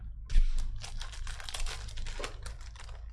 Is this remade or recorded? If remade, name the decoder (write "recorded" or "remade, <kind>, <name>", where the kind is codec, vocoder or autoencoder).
recorded